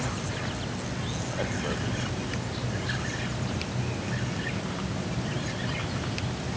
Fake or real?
real